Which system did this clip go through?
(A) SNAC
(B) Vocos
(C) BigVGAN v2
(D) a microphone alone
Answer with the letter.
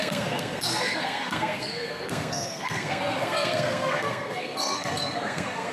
A